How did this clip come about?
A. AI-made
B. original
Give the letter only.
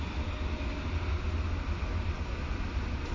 B